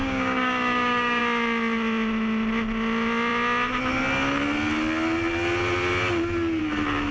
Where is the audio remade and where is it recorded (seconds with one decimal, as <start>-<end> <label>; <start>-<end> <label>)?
0.0-1.2 remade; 1.2-7.1 recorded